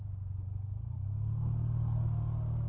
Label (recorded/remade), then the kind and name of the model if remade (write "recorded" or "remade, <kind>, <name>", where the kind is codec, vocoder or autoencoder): recorded